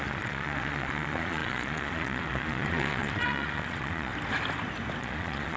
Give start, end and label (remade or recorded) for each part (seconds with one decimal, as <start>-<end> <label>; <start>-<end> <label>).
0.0-4.1 remade; 4.1-5.0 recorded; 5.0-5.6 remade